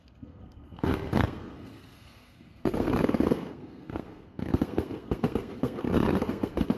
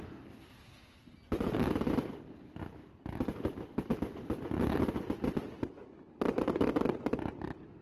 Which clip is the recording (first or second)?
second